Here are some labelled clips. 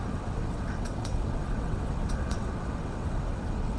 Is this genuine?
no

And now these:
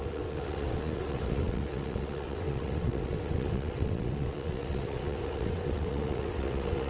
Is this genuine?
no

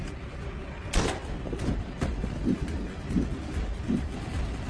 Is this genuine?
yes